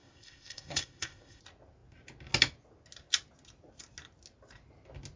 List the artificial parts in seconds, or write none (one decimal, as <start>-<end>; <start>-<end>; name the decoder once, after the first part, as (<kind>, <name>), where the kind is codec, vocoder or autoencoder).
0.0-1.4 (codec, ZipCodec)